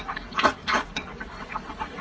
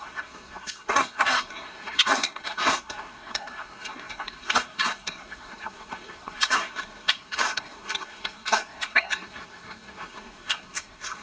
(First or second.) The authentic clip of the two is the first